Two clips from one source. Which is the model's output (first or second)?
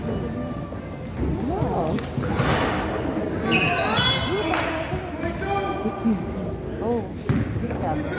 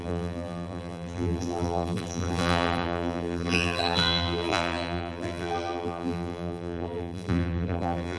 second